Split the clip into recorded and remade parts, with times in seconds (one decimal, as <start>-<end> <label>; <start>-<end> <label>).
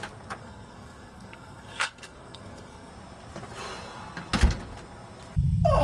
0.0-0.4 recorded; 0.4-2.9 remade; 2.9-5.8 recorded